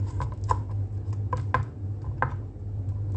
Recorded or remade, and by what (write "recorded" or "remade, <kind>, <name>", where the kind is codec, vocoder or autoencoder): recorded